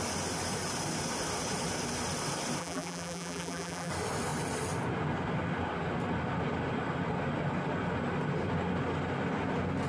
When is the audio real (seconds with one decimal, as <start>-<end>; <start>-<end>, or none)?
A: 0.0-2.6; 3.9-9.9